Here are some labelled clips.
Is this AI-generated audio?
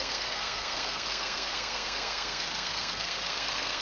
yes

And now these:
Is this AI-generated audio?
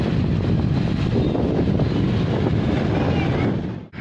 no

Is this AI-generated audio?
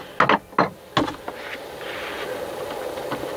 no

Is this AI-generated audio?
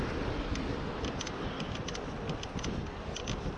no